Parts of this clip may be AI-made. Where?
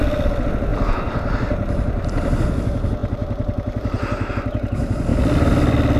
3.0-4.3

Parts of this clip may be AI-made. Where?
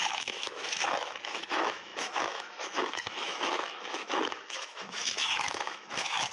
0.0-6.3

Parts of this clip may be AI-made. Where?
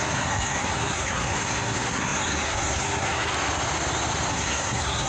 0.0-3.3; 4.3-5.1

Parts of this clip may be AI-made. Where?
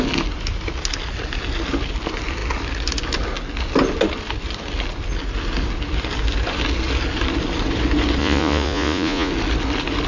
8.2-9.3